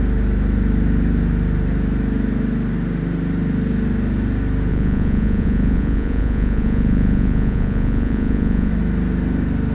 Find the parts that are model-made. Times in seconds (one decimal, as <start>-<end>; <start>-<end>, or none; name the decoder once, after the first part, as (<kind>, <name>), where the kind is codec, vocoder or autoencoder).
4.7-8.7 (vocoder, Vocos)